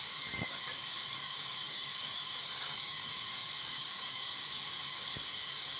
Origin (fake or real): fake